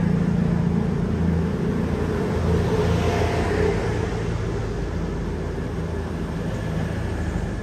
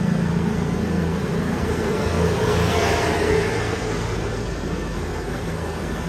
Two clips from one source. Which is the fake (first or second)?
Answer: second